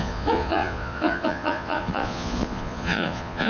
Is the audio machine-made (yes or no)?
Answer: yes